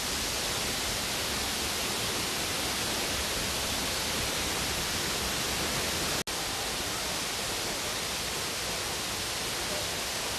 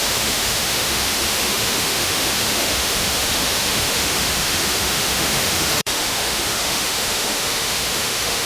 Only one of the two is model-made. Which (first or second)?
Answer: second